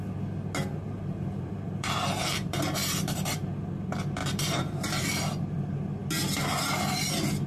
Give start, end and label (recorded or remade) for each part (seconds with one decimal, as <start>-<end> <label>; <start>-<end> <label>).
0.0-0.7 recorded; 0.7-3.5 remade; 3.5-4.2 recorded; 4.2-5.2 remade; 5.2-7.5 recorded